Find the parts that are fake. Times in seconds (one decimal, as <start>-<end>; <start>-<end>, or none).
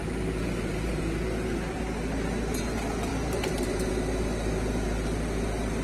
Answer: 0.0-1.0; 3.1-3.9